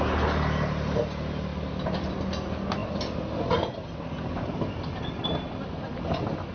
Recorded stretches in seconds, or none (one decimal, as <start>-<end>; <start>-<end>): 0.0-1.5; 2.1-6.5